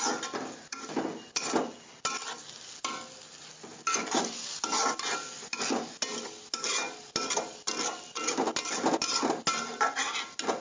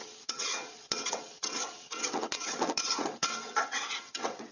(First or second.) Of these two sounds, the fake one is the second